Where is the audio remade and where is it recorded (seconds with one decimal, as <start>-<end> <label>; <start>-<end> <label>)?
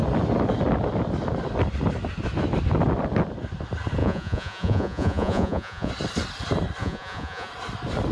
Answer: 0.0-4.0 recorded; 4.0-5.9 remade; 5.9-6.8 recorded; 6.8-7.5 remade; 7.5-8.1 recorded